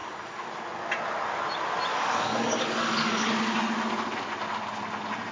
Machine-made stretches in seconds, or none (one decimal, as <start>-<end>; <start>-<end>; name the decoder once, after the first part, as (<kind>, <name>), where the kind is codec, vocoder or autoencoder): 0.0-0.5 (codec, DAC); 1.9-3.3